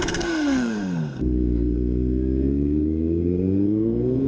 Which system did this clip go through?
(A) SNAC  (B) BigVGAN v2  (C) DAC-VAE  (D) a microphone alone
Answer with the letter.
A